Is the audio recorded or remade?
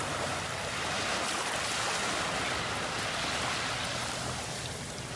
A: recorded